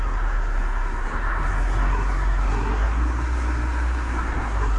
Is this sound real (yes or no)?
no